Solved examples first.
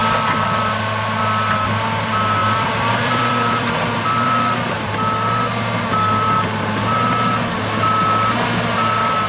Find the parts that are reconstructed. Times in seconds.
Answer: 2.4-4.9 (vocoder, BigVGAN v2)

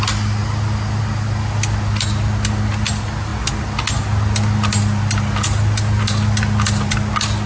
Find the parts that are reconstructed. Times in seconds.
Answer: none

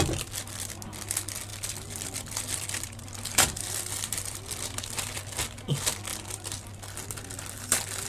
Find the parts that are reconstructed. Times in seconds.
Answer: 1.5-5.2 (vocoder, BigVGAN v2)

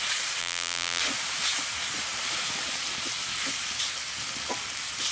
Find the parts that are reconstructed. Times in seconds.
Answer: 0.4-1.0 (vocoder, BigVGAN v2)